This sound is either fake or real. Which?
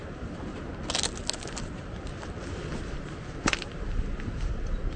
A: real